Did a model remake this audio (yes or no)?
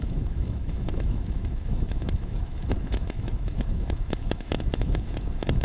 yes